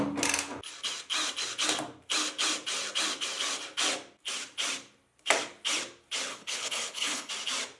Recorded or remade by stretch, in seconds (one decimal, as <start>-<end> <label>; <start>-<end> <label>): 0.0-6.3 recorded; 6.3-7.3 remade; 7.3-7.8 recorded